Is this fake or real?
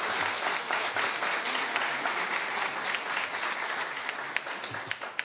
real